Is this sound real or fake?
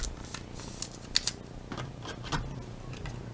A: real